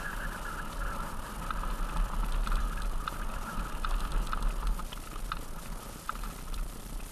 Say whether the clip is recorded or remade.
recorded